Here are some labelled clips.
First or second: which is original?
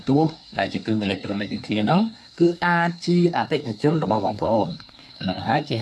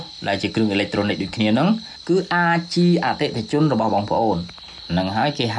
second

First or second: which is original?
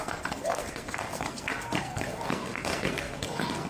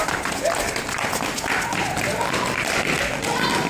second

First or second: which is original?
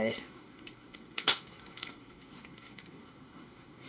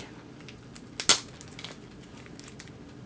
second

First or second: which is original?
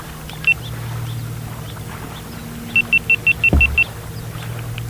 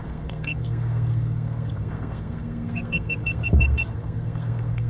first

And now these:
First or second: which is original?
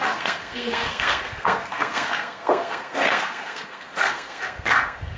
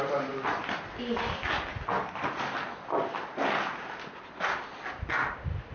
second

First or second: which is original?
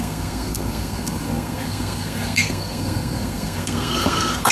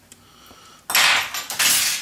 second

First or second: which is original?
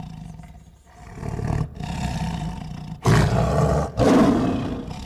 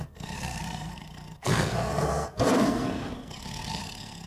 first